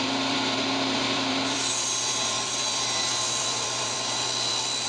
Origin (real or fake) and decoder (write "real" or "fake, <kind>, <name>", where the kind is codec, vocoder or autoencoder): fake, vocoder, BigVGAN v2